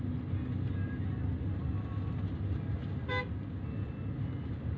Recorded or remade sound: recorded